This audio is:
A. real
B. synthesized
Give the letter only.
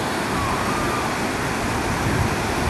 A